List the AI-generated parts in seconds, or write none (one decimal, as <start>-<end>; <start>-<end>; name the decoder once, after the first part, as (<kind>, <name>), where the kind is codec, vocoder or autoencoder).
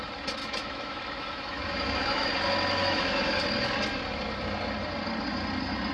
0.4-2.3 (autoencoder, DAC-VAE); 2.8-3.4